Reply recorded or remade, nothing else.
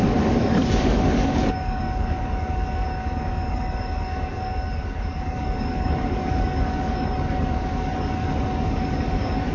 remade